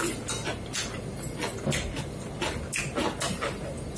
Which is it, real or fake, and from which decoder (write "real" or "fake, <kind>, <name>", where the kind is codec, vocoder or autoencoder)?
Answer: real